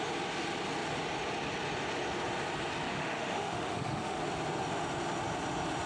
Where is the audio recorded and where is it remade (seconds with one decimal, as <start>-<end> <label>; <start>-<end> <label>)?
0.0-2.9 recorded; 2.9-4.2 remade; 4.2-5.9 recorded